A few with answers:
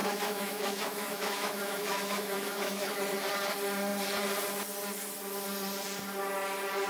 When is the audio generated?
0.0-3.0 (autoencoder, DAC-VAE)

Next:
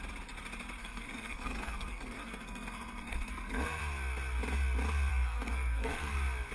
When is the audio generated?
0.8-3.8 (codec, SNAC); 5.1-6.1

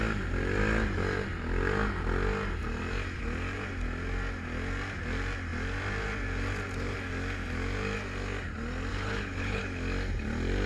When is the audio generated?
8.9-9.6 (codec, HILCodec)